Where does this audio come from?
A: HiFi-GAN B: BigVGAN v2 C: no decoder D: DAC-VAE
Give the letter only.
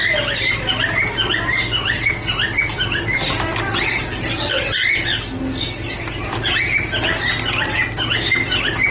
C